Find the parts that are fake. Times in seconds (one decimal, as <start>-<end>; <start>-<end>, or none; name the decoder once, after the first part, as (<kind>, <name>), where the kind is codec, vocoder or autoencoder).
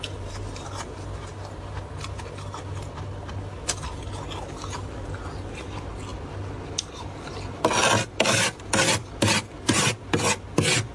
none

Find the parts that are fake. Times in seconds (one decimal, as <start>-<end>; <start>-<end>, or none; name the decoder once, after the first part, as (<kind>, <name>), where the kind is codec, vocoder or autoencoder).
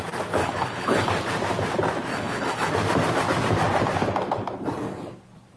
0.4-1.1 (codec, HILCodec); 2.1-2.7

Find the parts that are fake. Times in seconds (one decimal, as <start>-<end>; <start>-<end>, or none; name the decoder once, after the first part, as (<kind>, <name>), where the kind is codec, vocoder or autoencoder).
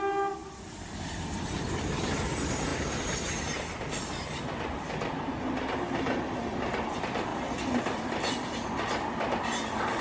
none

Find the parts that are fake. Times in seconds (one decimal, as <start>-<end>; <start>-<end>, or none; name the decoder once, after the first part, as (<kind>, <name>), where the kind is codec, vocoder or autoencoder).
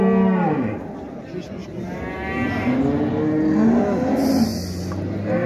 none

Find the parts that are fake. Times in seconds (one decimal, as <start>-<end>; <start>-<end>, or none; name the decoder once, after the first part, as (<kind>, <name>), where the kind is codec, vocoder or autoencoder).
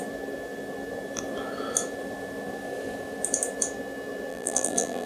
4.3-5.1 (vocoder, BigVGAN v2)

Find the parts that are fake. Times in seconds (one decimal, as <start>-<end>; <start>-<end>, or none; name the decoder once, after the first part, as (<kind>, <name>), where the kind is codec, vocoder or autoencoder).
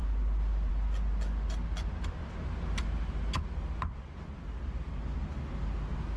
none